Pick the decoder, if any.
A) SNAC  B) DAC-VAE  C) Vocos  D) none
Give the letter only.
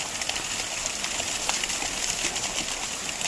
D